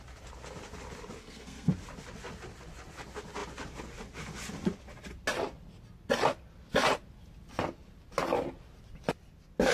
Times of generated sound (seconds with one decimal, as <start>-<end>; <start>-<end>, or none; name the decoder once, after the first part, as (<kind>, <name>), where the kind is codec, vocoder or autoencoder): 1.2-1.7 (codec, SNAC)

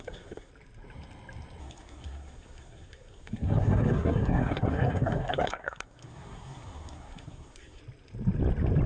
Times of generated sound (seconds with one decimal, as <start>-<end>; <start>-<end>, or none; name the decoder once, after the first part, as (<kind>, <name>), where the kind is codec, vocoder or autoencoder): 0.0-0.5 (codec, SNAC); 1.6-7.8

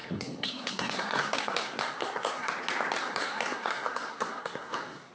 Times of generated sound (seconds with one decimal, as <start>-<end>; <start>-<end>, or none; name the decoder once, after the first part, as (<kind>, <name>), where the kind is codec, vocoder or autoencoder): 0.0-2.5 (codec, SNAC); 3.0-5.1

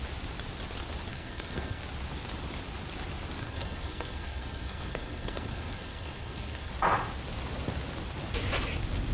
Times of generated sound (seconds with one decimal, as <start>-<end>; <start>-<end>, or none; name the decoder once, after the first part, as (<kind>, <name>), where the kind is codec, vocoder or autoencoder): 1.1-1.8 (codec, SNAC); 3.4-6.7

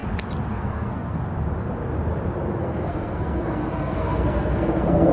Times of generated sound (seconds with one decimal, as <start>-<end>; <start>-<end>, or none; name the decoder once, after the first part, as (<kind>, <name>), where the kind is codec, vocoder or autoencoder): 0.5-1.2 (codec, SNAC); 2.6-5.1